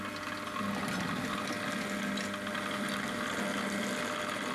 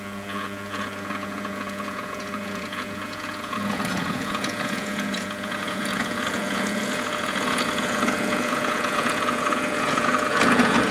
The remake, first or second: second